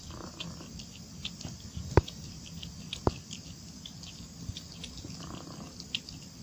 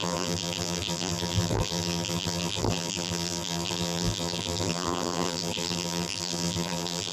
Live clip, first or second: first